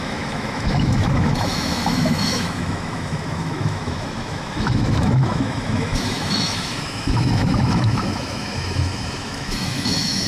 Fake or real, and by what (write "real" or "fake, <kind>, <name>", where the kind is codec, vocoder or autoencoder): fake, autoencoder, DAC-VAE